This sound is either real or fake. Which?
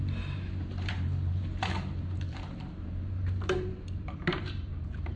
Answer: fake